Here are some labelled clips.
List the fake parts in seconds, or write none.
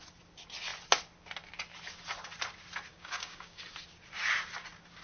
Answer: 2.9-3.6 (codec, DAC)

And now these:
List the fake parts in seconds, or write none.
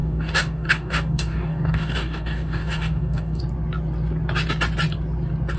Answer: 0.0-3.4 (codec, DAC)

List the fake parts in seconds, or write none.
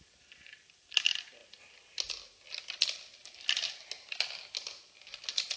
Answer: none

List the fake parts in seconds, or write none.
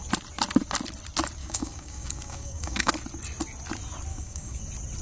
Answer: 1.4-2.9 (codec, DAC); 4.1-4.6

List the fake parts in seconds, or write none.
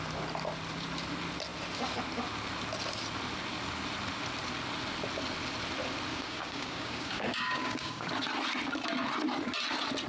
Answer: 6.1-8.1 (codec, DAC)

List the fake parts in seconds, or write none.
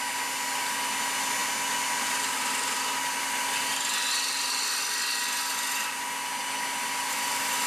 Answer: none